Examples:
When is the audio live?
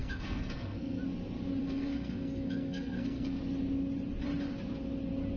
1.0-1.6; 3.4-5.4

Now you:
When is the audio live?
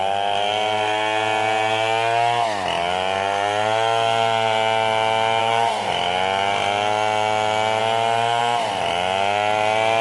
0.0-5.4; 5.9-10.0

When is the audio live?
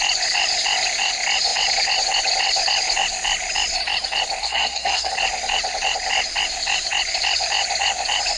0.0-4.4; 5.1-8.4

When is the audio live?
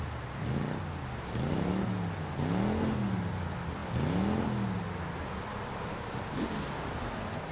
0.0-7.5